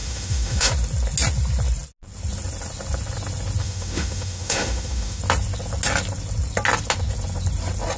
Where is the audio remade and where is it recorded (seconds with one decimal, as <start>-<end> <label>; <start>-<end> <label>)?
0.0-0.7 remade; 0.7-3.6 recorded; 3.6-5.2 remade; 5.2-8.0 recorded